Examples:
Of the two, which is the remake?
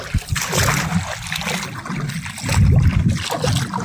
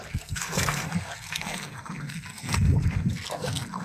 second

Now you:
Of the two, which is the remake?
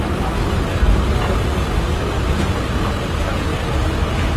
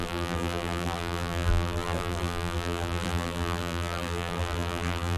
second